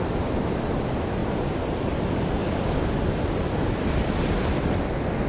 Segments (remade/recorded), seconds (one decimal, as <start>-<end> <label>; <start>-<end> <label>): 0.0-1.2 recorded; 1.2-1.8 remade; 1.8-2.4 recorded; 2.4-4.3 remade; 4.3-5.3 recorded